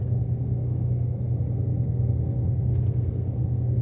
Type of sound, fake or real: fake